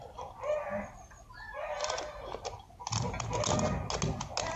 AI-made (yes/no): no